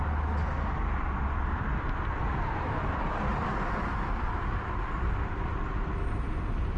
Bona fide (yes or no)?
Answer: yes